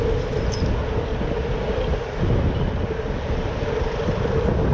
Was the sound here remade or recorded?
recorded